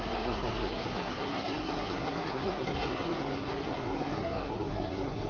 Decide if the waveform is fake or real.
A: fake